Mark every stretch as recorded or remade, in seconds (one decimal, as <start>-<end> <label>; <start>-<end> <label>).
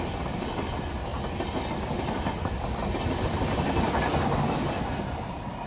0.0-5.7 recorded